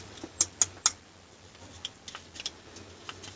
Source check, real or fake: real